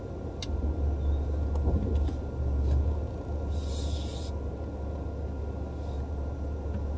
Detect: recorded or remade recorded